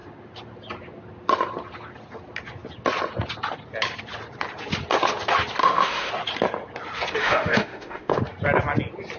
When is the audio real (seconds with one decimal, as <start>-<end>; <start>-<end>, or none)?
0.0-5.6; 6.1-7.2; 8.2-9.2